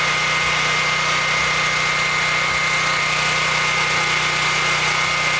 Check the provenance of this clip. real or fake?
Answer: real